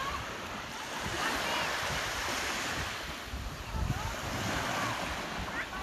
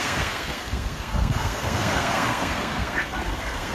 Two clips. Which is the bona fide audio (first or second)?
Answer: first